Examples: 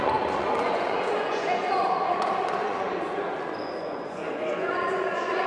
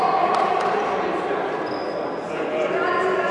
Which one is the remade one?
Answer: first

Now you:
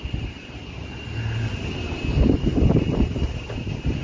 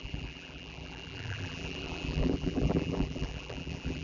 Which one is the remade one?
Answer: second